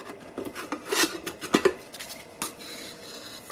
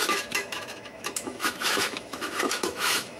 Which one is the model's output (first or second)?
second